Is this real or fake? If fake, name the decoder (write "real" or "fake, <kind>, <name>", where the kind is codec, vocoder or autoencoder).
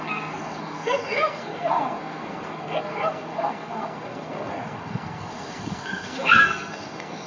fake, codec, SNAC